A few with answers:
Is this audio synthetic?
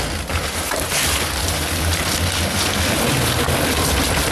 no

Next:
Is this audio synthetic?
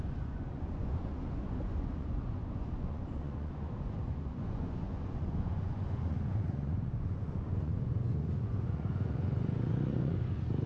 yes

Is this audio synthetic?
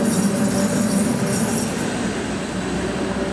no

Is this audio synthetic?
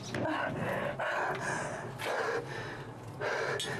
no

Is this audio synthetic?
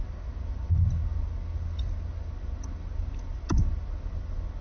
no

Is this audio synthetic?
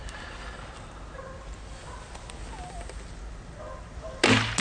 no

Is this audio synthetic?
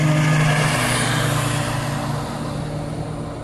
no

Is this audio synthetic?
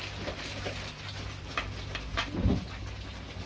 no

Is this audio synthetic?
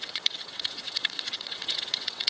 yes